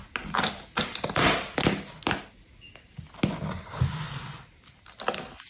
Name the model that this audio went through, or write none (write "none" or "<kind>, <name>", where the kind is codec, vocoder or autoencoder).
none